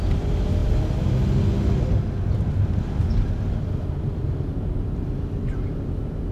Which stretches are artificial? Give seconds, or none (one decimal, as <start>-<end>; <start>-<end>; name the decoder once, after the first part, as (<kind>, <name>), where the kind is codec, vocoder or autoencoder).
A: none